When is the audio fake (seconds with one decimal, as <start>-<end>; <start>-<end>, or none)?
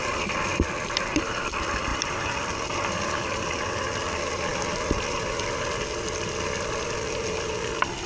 1.9-3.6